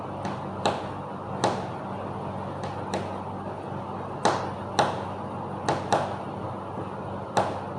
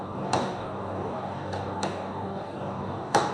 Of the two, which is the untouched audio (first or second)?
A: first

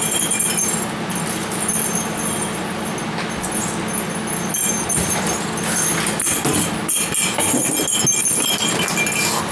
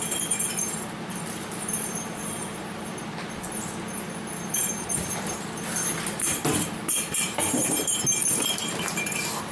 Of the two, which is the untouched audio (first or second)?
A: first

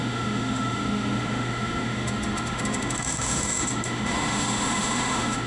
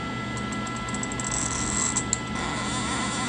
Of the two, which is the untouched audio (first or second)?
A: second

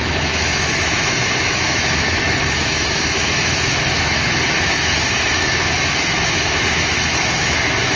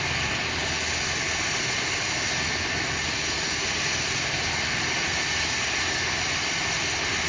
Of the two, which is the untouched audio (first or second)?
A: second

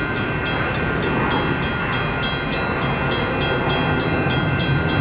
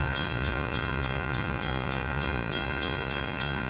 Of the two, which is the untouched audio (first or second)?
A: first